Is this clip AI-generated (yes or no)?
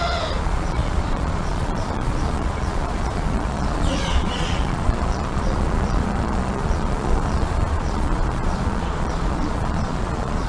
yes